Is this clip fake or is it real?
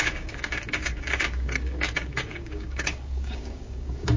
fake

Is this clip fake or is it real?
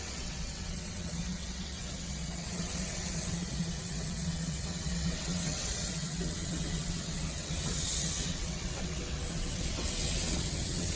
fake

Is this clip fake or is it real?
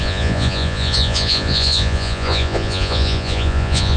fake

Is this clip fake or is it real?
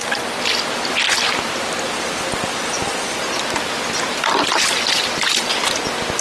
real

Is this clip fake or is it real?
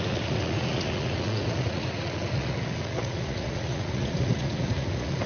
fake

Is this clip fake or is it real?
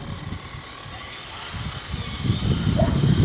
real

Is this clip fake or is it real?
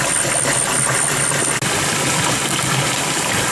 real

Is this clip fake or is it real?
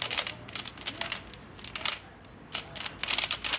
real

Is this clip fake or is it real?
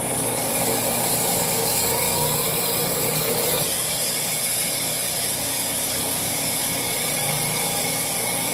fake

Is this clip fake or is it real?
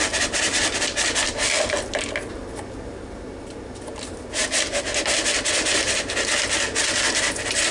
real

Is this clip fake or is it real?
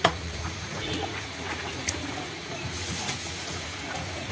fake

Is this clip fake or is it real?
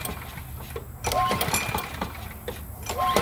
real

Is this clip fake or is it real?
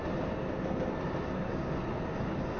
real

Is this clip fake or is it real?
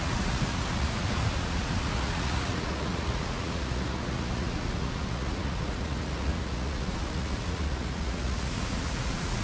fake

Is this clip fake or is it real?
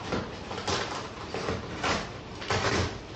fake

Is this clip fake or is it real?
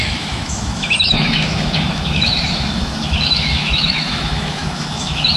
fake